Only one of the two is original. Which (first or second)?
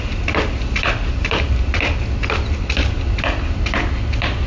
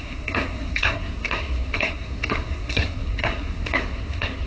first